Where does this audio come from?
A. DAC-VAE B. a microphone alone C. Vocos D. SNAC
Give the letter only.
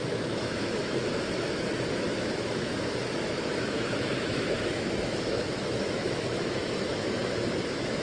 A